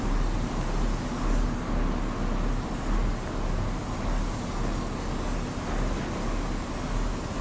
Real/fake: real